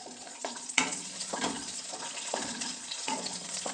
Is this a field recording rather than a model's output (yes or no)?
no